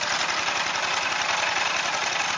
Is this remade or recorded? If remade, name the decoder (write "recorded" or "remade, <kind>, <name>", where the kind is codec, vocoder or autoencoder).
recorded